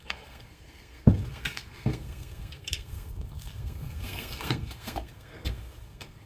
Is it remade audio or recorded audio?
remade